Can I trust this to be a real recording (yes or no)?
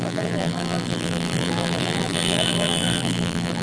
no